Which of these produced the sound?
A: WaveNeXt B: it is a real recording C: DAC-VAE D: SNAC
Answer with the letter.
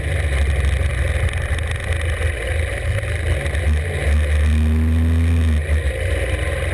B